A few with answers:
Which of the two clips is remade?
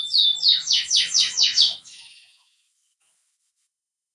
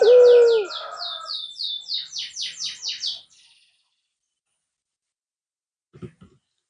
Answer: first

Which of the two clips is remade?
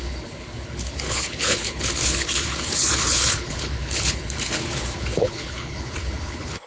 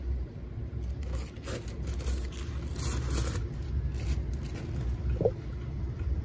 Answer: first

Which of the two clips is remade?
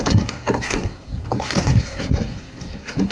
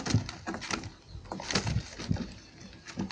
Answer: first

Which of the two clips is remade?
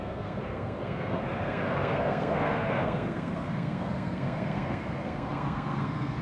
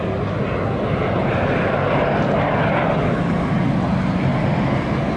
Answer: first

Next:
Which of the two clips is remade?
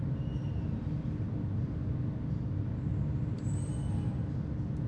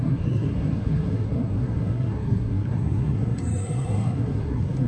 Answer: second